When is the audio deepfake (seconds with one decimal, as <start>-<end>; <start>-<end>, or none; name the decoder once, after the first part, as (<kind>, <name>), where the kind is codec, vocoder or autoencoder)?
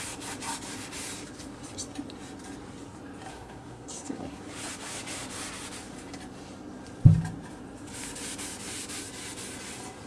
3.3-4.4 (codec, SNAC)